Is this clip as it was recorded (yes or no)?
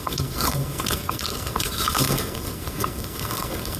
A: no